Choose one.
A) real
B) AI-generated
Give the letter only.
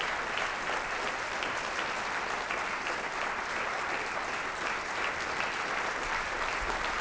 A